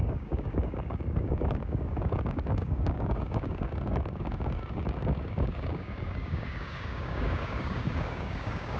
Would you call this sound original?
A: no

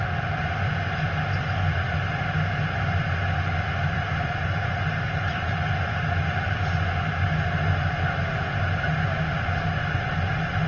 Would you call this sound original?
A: yes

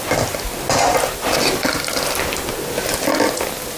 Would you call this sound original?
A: yes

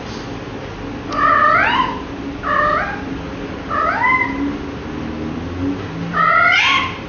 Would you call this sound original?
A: yes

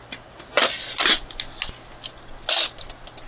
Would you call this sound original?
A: yes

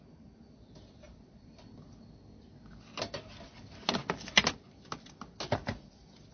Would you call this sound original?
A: yes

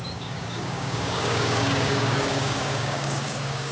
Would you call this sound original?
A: no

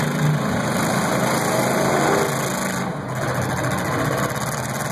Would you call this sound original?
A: yes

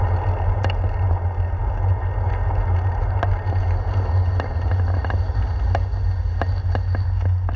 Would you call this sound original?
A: yes